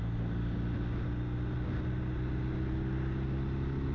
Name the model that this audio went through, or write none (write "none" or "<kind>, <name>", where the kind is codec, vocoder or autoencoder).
none